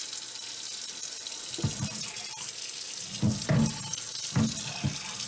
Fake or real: real